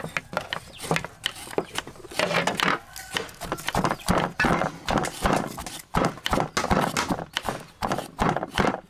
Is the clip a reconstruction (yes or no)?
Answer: no